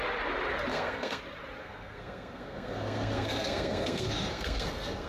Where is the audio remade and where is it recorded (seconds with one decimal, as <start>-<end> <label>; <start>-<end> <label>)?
0.0-0.7 recorded; 0.7-1.2 remade; 1.2-1.6 recorded; 1.6-5.1 remade